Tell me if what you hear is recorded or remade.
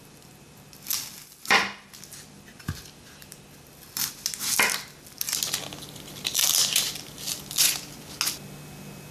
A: recorded